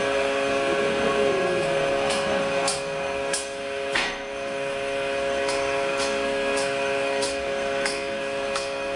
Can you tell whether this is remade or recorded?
remade